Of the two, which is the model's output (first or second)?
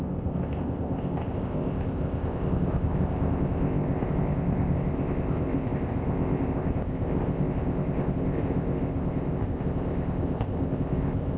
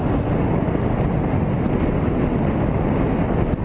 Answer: first